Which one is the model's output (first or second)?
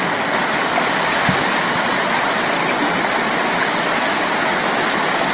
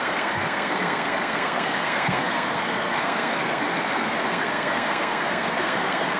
second